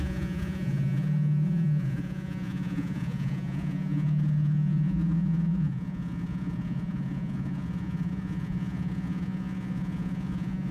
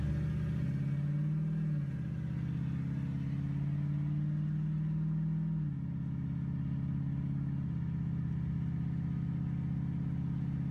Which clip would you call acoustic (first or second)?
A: second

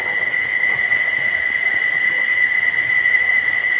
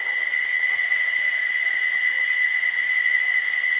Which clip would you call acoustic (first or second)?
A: second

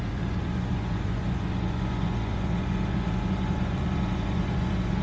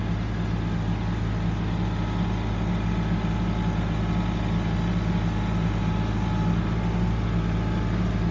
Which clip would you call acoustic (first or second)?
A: second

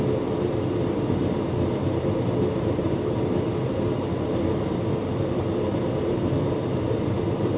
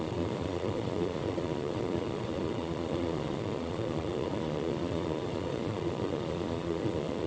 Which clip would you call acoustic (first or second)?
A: first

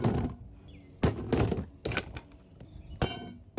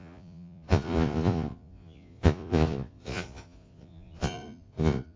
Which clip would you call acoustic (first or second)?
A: first